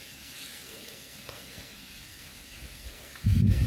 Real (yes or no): no